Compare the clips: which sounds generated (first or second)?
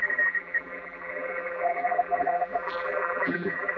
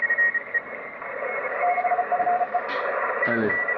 first